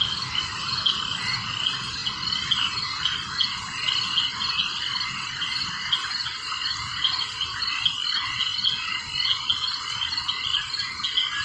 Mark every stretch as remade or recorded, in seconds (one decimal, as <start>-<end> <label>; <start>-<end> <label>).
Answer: 0.0-11.4 recorded